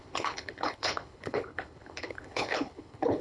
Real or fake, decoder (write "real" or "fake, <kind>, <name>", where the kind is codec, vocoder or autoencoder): fake, codec, HILCodec